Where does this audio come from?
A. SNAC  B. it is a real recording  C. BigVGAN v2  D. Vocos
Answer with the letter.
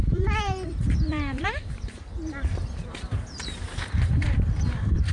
C